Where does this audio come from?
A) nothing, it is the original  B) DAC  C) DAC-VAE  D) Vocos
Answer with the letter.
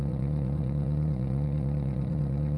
D